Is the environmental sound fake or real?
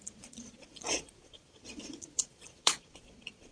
fake